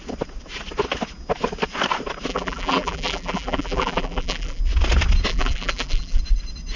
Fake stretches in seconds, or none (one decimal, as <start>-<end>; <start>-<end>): 2.3-4.6; 5.3-6.2